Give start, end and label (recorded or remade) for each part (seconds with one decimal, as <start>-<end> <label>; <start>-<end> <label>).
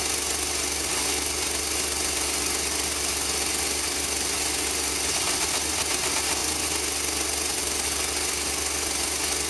0.0-9.5 recorded